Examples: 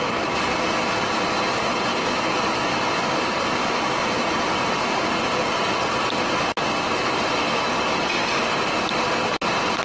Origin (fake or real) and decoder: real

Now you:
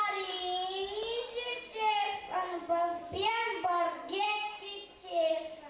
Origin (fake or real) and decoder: real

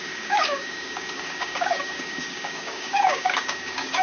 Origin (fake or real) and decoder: fake, codec, DAC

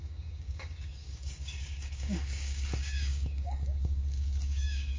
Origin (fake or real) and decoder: fake, codec, DAC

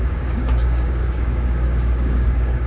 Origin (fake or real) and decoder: fake, codec, DAC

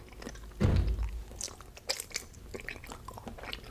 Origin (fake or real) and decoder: real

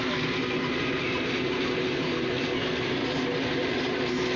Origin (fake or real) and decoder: real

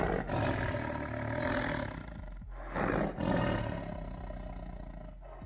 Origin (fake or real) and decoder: real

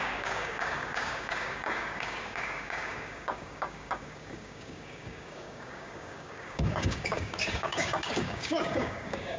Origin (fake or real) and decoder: fake, codec, DAC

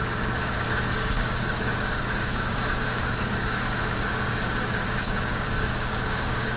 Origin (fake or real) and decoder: fake, codec, DAC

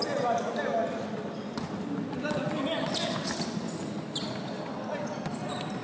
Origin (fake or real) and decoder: real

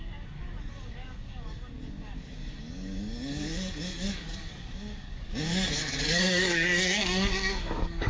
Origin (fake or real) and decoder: fake, codec, DAC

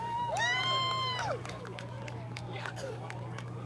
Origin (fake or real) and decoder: fake, codec, DAC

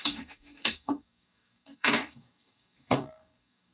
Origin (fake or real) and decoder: fake, codec, DAC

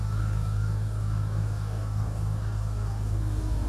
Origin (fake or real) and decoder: fake, codec, DAC